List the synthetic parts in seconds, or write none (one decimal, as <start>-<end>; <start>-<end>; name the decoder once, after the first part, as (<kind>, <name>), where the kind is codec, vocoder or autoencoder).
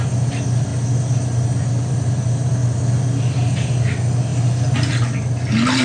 none